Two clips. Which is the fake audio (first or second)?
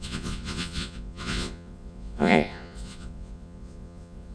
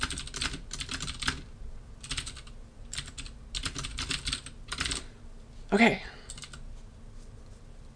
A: first